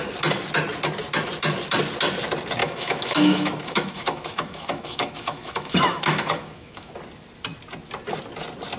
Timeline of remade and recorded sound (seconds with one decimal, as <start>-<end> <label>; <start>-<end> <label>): 0.0-2.6 recorded; 2.6-6.9 remade; 6.9-8.8 recorded